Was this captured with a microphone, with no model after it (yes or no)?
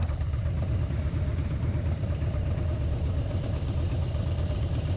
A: no